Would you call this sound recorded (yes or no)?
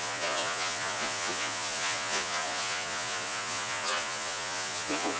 no